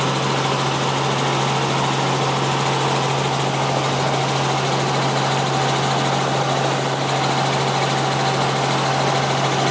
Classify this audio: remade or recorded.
recorded